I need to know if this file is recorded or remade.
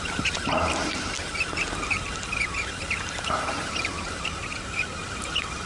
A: recorded